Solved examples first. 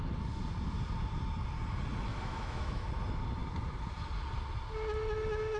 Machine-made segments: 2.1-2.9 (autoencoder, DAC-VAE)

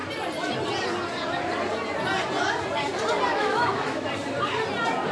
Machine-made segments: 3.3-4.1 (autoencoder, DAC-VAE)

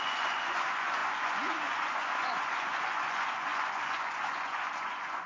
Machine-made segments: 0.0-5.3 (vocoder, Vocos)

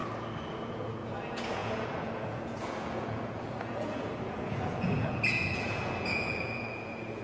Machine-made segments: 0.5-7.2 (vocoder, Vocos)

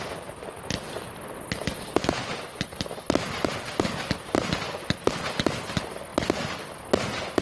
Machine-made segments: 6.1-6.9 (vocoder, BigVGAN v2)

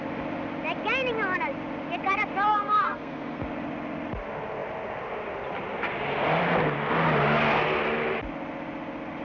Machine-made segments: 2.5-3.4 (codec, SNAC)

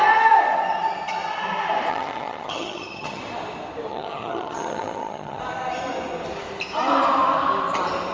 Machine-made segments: 1.9-3.2 (vocoder, HiFi-GAN); 3.9-5.4